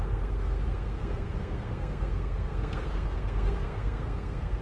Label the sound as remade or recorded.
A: remade